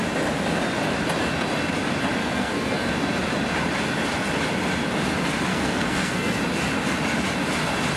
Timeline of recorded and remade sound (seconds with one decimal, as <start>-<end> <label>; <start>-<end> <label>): 0.0-2.2 recorded; 2.2-2.9 remade; 2.9-5.5 recorded; 5.5-6.4 remade; 6.4-8.0 recorded